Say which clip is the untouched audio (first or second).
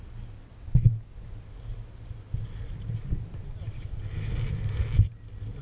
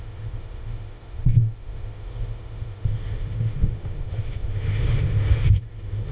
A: first